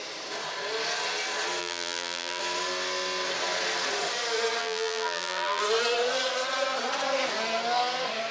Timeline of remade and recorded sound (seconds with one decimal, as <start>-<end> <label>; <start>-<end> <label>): 0.0-1.6 recorded; 1.6-2.4 remade; 2.4-4.6 recorded; 4.6-5.6 remade; 5.6-8.3 recorded